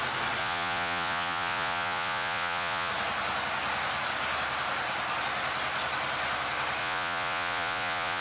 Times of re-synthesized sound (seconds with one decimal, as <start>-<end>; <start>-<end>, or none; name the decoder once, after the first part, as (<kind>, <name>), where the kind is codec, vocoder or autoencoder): 0.4-2.9 (vocoder, Vocos); 6.8-8.2